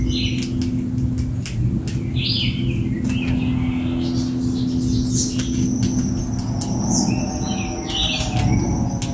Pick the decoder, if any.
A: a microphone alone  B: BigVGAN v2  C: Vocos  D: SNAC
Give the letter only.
A